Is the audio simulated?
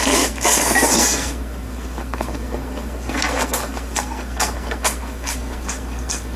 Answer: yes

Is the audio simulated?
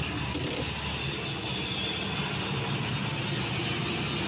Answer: no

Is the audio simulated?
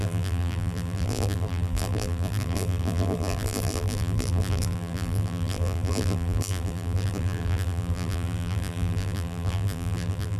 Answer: yes